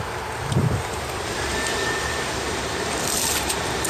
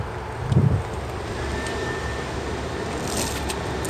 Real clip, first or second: second